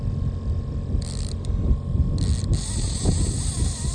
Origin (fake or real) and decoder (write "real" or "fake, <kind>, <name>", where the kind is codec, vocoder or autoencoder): real